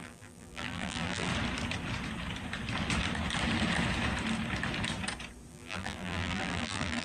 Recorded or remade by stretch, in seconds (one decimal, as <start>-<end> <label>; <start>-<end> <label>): 0.0-1.3 remade; 1.3-5.5 recorded; 5.5-7.0 remade